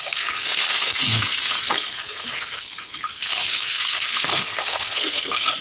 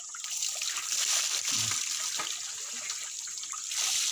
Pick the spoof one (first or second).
first